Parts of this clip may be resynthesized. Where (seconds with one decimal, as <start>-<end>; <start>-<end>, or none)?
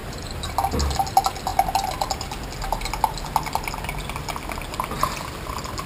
0.0-0.5